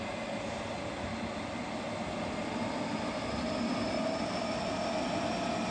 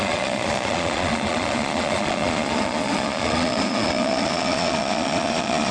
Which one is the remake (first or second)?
second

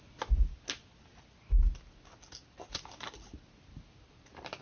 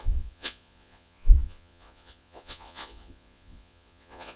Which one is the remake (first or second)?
second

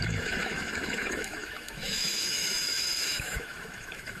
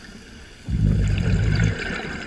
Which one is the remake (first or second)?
first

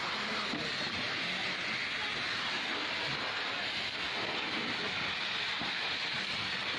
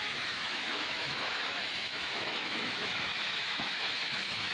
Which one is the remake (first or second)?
second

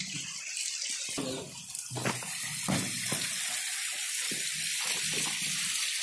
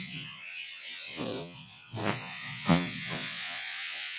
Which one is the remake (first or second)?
second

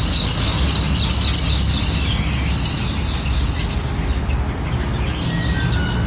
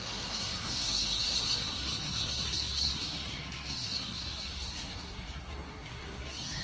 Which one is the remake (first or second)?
second